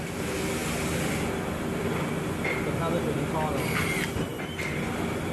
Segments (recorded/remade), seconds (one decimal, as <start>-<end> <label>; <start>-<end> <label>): 0.0-5.3 recorded